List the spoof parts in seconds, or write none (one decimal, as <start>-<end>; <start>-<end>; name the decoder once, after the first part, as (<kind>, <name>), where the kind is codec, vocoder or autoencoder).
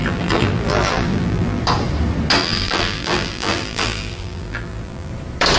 0.0-1.6 (vocoder, BigVGAN v2); 2.4-5.1